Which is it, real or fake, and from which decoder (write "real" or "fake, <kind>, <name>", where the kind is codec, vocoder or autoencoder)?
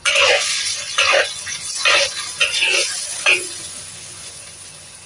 fake, vocoder, Vocos